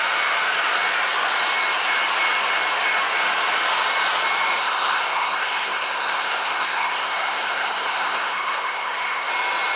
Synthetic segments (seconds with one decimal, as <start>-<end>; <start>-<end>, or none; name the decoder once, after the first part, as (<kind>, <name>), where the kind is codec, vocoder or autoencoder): 4.6-9.3 (codec, SNAC)